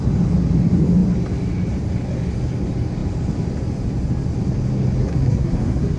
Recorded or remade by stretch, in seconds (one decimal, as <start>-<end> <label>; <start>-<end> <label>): 0.0-5.1 recorded; 5.1-6.0 remade